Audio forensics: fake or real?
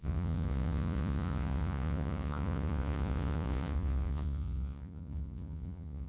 fake